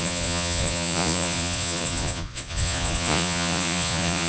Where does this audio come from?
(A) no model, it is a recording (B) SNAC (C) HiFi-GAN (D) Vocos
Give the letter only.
D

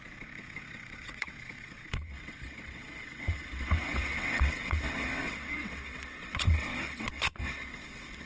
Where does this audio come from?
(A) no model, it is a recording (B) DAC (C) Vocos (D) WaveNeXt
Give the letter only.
D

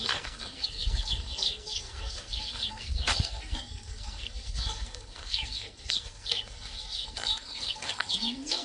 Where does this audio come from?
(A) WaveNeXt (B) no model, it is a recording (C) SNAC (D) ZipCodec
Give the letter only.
C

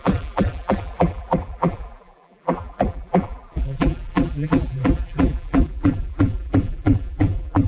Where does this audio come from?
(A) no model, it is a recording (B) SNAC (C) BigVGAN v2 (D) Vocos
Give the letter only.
C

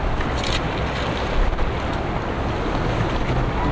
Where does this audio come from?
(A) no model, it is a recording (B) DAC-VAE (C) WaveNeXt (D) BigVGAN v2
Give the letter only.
A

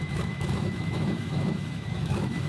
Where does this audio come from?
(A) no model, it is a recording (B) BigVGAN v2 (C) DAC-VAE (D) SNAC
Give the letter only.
C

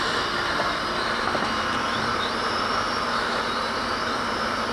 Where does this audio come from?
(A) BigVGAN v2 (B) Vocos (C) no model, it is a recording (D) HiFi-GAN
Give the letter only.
C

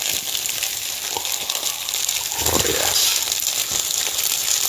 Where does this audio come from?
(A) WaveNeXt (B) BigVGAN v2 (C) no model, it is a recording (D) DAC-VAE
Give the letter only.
C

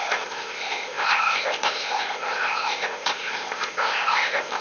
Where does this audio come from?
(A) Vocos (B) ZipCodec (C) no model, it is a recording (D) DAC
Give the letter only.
B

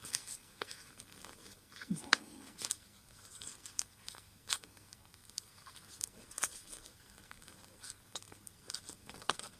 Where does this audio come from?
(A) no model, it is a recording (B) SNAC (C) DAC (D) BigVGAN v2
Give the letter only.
B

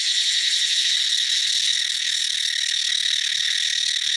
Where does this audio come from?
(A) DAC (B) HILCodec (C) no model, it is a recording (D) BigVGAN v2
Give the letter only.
B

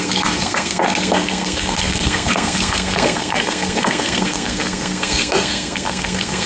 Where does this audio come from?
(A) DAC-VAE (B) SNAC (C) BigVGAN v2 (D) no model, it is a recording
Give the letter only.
B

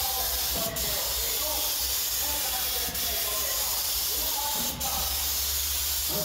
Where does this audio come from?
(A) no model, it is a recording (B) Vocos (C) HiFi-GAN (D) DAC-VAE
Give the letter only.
A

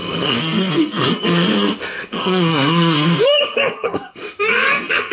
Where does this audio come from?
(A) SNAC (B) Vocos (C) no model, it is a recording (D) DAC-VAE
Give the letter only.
A